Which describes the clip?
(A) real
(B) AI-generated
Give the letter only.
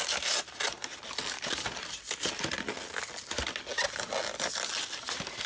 A